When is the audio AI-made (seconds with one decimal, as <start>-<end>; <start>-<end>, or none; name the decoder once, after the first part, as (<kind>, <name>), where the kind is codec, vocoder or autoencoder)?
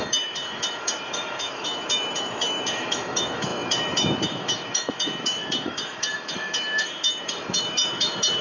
0.0-8.4 (autoencoder, DAC-VAE)